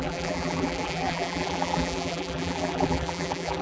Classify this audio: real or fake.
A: fake